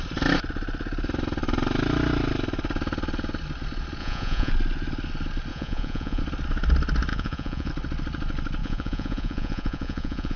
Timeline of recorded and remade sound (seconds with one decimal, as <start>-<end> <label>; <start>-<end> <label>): 0.0-4.0 recorded; 4.0-4.5 remade; 4.5-5.5 recorded; 5.5-6.2 remade; 6.2-7.1 recorded; 7.1-7.7 remade; 7.7-8.6 recorded; 8.6-10.4 remade